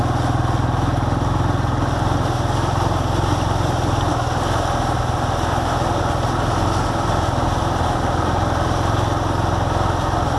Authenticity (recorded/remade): recorded